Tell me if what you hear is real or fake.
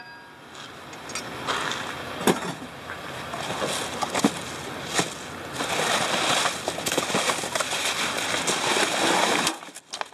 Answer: real